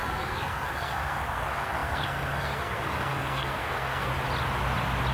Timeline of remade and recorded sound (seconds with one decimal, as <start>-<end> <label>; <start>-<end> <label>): 0.0-4.1 remade; 4.1-5.1 recorded